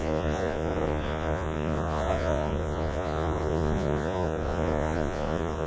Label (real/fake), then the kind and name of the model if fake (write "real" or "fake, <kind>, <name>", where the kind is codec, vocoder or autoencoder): fake, vocoder, Vocos